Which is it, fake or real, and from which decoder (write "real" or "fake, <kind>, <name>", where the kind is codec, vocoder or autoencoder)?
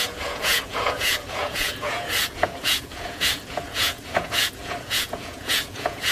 fake, vocoder, Vocos